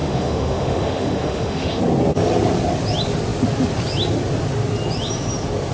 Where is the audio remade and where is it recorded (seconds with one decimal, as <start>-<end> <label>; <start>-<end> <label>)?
0.0-1.8 remade; 1.8-5.7 recorded